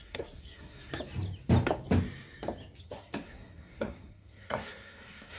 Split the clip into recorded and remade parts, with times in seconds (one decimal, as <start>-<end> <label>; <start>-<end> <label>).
0.0-0.9 remade; 0.9-2.8 recorded; 2.8-5.4 remade